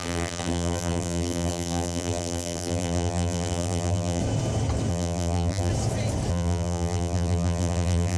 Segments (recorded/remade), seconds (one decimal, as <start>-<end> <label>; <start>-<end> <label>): 0.0-4.2 remade; 4.2-4.9 recorded; 4.9-5.7 remade; 5.7-6.3 recorded; 6.3-8.2 remade